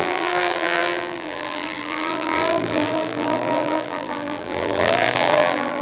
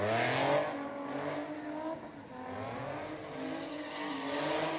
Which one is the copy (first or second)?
first